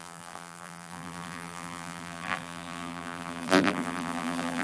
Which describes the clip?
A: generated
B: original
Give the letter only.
A